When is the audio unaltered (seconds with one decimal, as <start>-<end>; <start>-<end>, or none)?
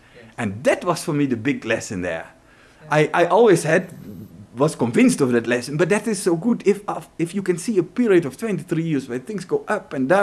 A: 0.0-3.7; 4.3-10.2